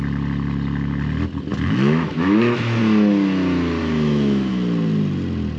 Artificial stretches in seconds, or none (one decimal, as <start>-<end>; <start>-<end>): 1.5-2.8; 3.8-4.5